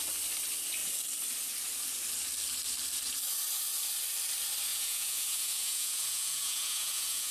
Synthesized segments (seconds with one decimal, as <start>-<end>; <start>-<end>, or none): 4.7-7.3